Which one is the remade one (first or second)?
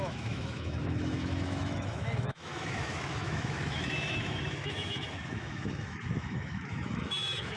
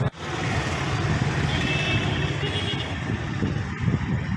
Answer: first